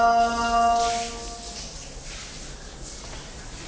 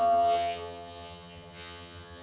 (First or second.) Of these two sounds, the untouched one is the first